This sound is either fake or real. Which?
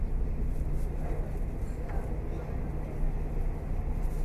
real